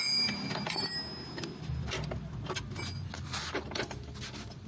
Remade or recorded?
recorded